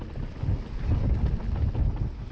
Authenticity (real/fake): real